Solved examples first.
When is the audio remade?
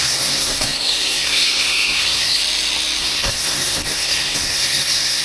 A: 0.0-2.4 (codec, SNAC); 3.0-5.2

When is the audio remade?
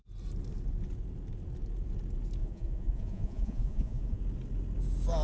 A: 2.4-4.2 (vocoder, Vocos)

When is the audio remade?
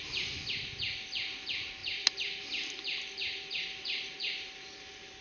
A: none